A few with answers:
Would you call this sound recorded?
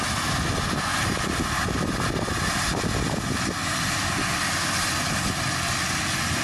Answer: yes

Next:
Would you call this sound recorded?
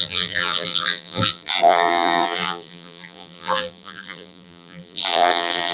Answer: no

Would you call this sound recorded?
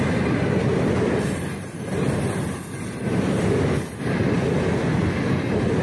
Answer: yes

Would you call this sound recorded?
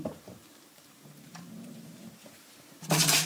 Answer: no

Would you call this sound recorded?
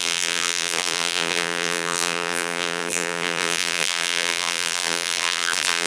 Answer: no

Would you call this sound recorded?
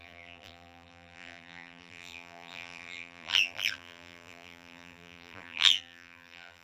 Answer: no